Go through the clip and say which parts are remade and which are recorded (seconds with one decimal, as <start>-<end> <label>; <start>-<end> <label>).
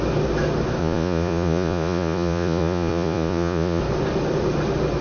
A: 0.0-0.8 recorded; 0.8-3.8 remade; 3.8-5.0 recorded